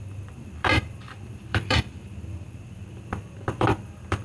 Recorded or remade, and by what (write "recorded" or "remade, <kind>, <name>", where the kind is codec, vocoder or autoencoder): remade, vocoder, BigVGAN v2